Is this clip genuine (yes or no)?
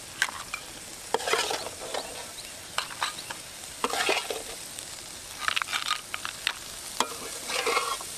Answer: yes